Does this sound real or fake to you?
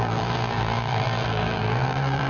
fake